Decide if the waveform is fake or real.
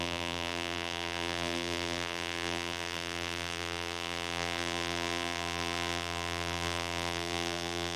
fake